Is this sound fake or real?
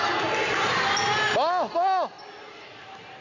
real